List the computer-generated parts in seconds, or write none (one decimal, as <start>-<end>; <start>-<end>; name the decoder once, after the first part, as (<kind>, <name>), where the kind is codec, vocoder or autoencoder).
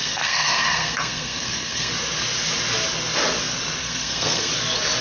0.0-1.9 (codec, SNAC); 3.8-4.5